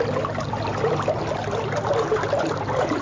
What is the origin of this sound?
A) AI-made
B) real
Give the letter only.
B